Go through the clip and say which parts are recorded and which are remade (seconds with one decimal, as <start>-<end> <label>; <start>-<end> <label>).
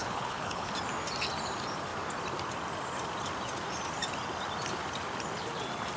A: 0.0-0.7 remade; 0.7-6.0 recorded